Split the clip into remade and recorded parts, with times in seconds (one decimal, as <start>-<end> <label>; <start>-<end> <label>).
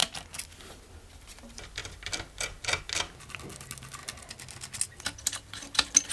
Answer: 0.0-6.1 recorded